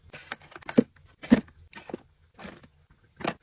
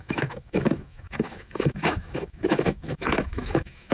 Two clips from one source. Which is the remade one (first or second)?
second